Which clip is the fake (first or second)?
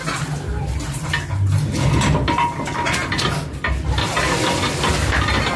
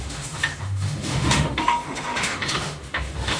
second